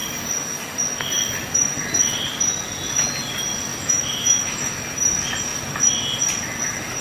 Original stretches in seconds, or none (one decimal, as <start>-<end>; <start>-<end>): 0.0-3.7; 4.8-7.0